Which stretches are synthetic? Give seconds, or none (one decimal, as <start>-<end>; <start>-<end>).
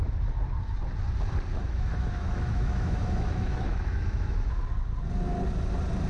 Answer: 1.5-4.6